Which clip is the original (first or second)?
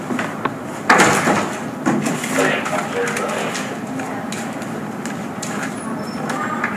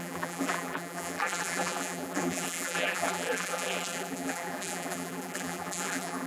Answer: first